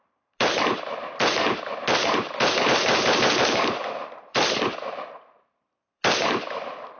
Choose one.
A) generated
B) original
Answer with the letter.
A